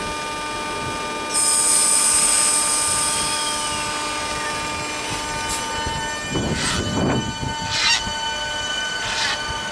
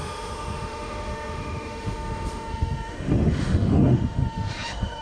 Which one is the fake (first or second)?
second